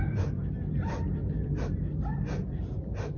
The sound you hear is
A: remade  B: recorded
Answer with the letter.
B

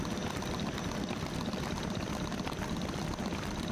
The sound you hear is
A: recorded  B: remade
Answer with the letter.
A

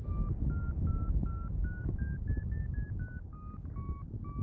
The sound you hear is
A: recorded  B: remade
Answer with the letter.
A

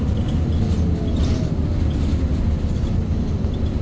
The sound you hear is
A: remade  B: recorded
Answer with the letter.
B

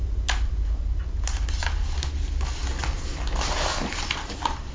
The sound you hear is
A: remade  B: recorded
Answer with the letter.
B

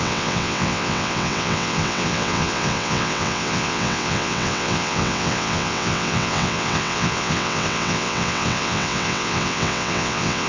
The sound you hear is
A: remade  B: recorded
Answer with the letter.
A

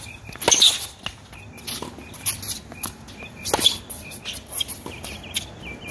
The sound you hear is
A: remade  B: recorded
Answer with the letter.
B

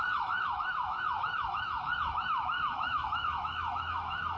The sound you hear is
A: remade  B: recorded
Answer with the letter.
A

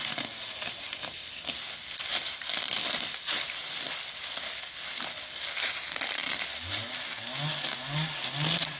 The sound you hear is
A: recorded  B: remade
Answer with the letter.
A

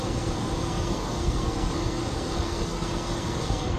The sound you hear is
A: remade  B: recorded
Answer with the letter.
A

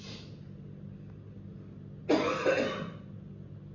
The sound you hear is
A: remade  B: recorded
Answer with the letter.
B